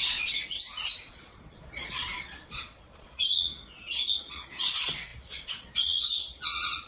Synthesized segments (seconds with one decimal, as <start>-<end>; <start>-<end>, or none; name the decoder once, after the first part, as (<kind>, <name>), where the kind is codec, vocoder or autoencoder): 0.0-0.4 (vocoder, Vocos); 1.0-6.9